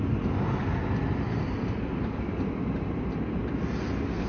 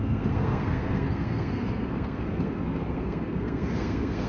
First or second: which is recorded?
first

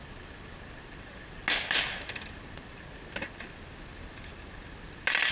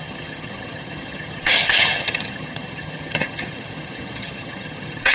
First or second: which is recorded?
first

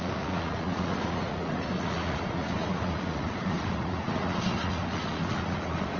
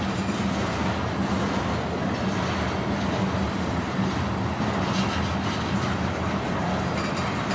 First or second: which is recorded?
second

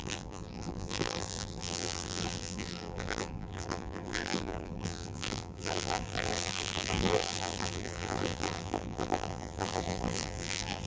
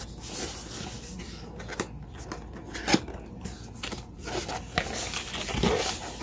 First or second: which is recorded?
second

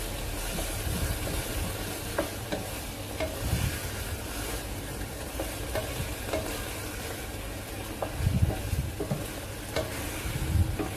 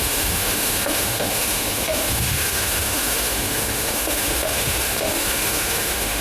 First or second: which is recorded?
first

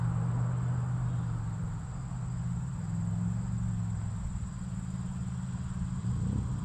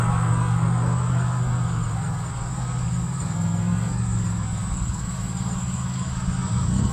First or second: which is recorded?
first